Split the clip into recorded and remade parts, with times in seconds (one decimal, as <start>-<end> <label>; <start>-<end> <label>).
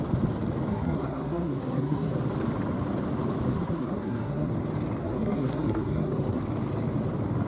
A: 0.0-0.7 recorded; 0.7-2.1 remade; 2.1-3.5 recorded; 3.5-4.5 remade; 4.5-5.0 recorded; 5.0-6.4 remade; 6.4-7.5 recorded